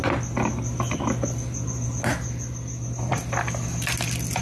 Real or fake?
real